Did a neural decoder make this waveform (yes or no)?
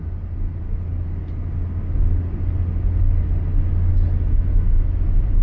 no